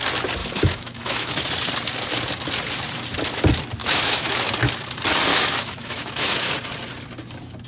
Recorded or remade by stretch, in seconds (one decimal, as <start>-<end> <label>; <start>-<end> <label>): 0.0-0.4 recorded; 0.4-1.3 remade; 1.3-3.8 recorded; 3.8-4.5 remade; 4.5-5.3 recorded; 5.3-6.5 remade; 6.5-7.7 recorded